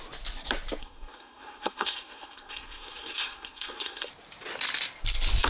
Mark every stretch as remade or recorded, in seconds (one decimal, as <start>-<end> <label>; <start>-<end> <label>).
0.0-0.8 recorded; 0.8-4.1 remade; 4.1-5.5 recorded